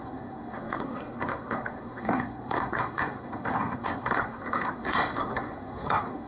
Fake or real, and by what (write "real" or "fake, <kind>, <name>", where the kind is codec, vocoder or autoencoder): fake, codec, SNAC